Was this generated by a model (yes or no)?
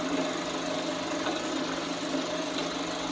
no